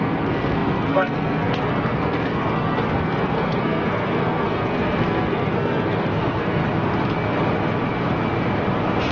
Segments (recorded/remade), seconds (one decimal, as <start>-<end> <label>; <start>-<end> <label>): 0.0-6.6 remade; 6.6-9.1 recorded